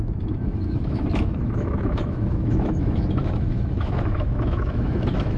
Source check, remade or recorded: remade